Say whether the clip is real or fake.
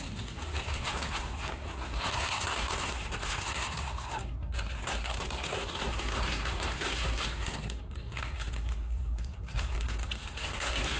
fake